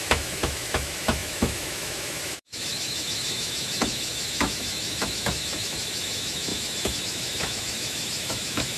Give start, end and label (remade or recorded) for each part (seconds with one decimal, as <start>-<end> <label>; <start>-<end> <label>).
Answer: 0.0-8.8 remade